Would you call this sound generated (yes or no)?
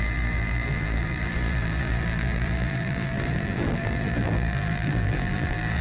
yes